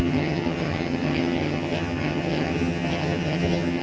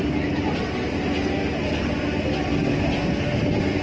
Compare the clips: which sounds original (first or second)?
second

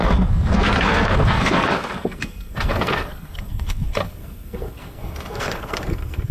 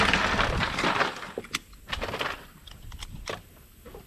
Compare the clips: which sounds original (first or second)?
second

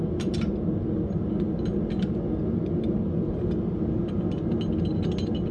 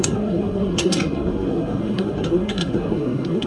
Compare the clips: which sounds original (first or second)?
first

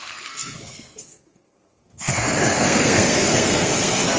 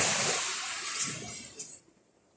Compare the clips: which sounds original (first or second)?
second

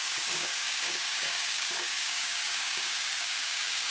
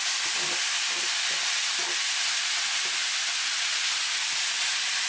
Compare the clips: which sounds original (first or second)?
second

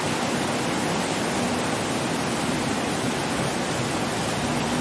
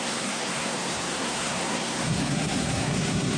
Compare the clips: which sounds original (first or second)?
first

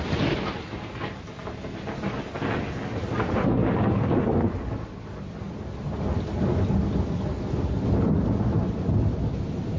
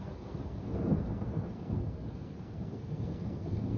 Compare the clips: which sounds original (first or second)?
first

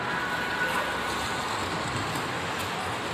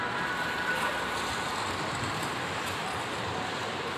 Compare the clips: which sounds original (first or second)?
first